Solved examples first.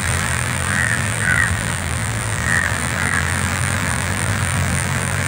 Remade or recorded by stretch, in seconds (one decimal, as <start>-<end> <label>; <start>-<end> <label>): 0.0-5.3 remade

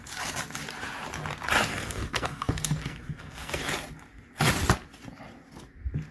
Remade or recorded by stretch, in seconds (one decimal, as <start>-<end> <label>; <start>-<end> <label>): 0.0-1.7 recorded; 1.7-3.7 remade; 3.7-6.1 recorded

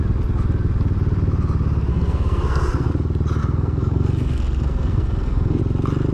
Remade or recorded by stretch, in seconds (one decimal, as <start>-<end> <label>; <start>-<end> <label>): 0.0-1.9 recorded; 1.9-2.9 remade; 2.9-3.4 recorded; 3.4-5.6 remade; 5.6-6.1 recorded

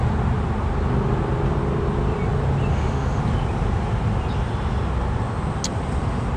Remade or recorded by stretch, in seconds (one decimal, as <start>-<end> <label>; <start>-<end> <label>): 0.0-2.7 recorded; 2.7-3.2 remade; 3.2-6.4 recorded

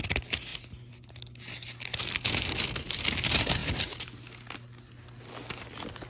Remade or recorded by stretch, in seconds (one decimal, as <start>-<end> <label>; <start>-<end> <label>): 0.0-6.1 recorded

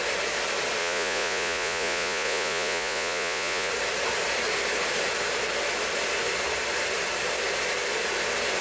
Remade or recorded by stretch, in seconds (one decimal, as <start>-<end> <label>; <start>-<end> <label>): 0.0-0.8 recorded; 0.8-3.7 remade; 3.7-8.6 recorded

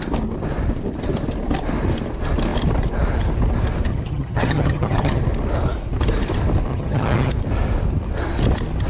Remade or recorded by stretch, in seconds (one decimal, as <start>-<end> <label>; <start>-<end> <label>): 0.0-3.9 recorded; 3.9-5.2 remade; 5.2-6.7 recorded; 6.7-7.3 remade; 7.3-8.9 recorded